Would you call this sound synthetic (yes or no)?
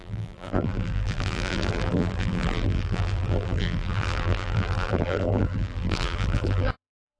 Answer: yes